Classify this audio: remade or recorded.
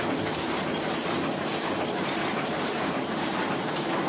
remade